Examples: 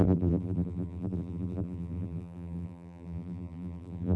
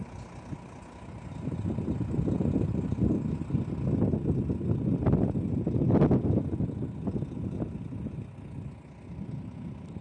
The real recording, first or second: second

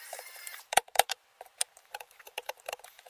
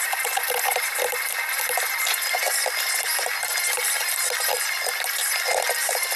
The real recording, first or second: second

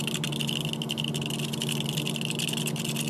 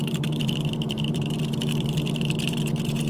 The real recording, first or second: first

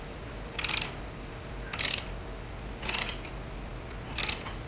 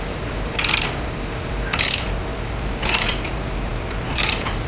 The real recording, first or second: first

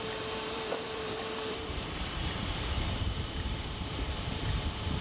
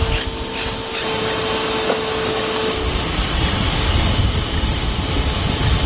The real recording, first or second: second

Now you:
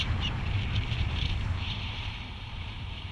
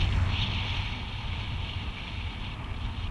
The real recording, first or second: second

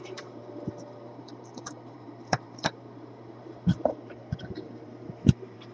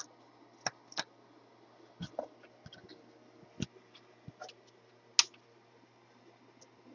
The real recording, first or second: second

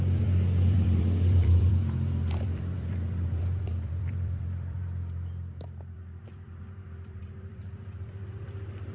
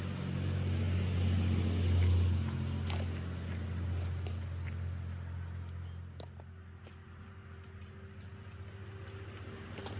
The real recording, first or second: second